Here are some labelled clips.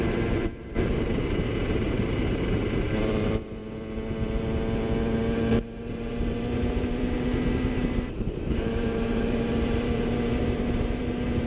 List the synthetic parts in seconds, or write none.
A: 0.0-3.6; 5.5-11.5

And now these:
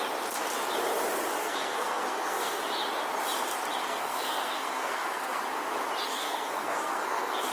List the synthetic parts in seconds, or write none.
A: 1.4-2.6; 3.8-5.4; 6.1-7.5

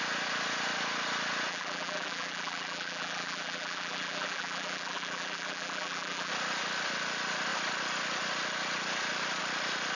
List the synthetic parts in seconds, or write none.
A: 1.5-6.3

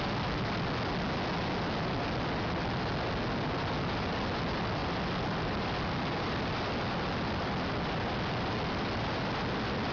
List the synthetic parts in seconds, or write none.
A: none